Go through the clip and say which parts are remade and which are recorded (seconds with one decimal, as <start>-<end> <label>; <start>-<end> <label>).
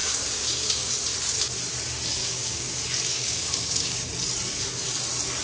0.0-0.9 remade; 0.9-2.2 recorded; 2.2-2.7 remade; 2.7-3.1 recorded; 3.1-4.1 remade; 4.1-5.4 recorded